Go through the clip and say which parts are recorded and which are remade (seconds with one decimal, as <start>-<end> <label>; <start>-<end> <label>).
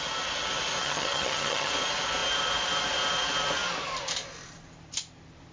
0.0-0.8 recorded; 0.8-1.7 remade; 1.7-5.5 recorded